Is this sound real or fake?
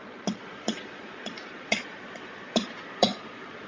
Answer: fake